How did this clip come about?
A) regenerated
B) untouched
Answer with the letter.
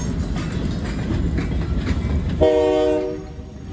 B